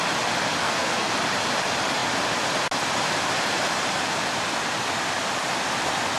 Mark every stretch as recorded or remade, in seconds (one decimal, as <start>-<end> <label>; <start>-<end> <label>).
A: 0.0-0.6 recorded; 0.6-1.1 remade; 1.1-6.2 recorded